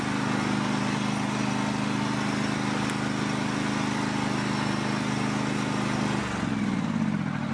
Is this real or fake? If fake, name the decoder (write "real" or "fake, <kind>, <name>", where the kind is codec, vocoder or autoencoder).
real